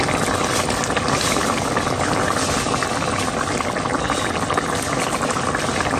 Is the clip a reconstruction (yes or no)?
no